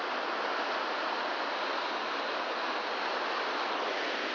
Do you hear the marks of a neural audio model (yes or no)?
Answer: no